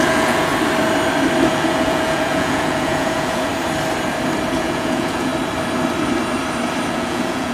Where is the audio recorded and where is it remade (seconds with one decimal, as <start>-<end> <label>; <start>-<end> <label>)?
0.0-0.5 remade; 0.5-1.5 recorded; 1.5-3.5 remade; 3.5-4.6 recorded; 4.6-5.3 remade; 5.3-6.9 recorded; 6.9-7.5 remade